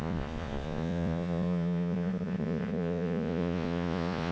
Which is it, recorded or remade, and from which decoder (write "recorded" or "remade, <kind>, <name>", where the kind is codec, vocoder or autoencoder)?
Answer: remade, vocoder, Vocos